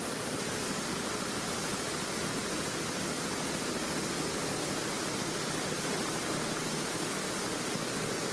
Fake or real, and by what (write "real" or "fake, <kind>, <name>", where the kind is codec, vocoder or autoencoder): real